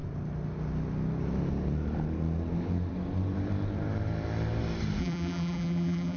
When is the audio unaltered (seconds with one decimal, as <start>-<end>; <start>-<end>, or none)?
0.0-5.0